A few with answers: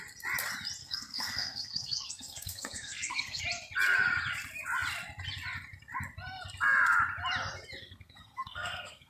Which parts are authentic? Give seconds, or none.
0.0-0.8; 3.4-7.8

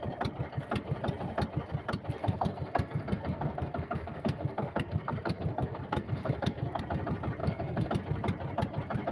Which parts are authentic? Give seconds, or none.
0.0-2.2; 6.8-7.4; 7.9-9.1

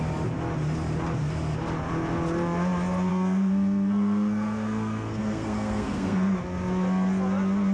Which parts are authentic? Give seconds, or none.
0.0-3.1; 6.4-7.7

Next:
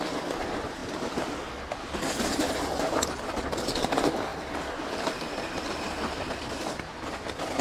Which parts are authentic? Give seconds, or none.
0.0-7.6

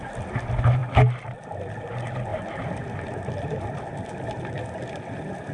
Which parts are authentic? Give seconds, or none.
0.0-5.5